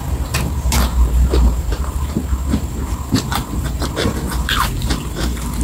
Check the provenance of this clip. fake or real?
fake